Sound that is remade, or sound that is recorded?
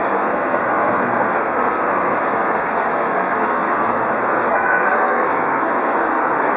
remade